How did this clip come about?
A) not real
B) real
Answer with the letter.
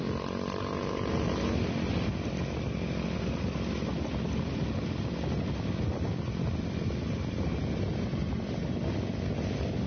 B